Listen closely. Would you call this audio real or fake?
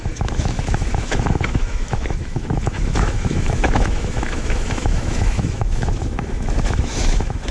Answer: fake